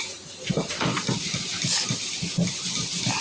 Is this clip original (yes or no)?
yes